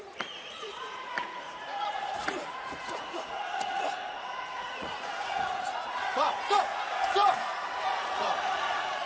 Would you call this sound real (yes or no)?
no